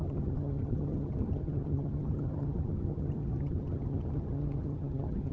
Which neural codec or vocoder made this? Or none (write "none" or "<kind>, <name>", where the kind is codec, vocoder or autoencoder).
vocoder, HiFi-GAN